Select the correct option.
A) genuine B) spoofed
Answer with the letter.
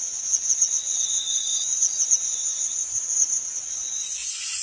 A